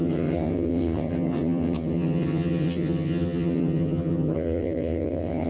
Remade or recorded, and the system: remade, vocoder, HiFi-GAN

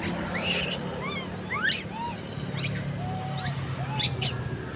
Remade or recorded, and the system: recorded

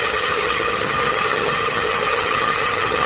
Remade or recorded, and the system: remade, vocoder, HiFi-GAN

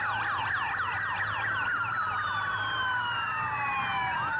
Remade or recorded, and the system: recorded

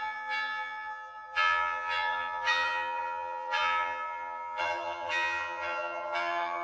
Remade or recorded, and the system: remade, vocoder, HiFi-GAN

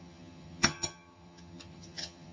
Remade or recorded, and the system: remade, vocoder, HiFi-GAN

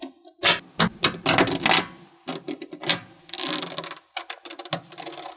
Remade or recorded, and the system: recorded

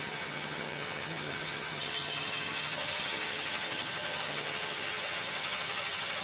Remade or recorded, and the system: remade, vocoder, HiFi-GAN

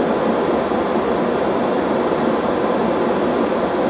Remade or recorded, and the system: recorded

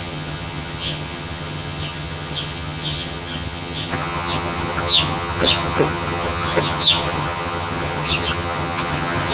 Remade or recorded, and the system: remade, vocoder, HiFi-GAN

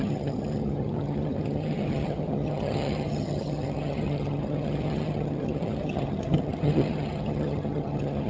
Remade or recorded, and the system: remade, vocoder, HiFi-GAN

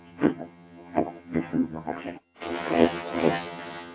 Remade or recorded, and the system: remade, vocoder, HiFi-GAN